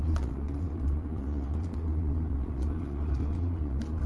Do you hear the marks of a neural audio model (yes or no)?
yes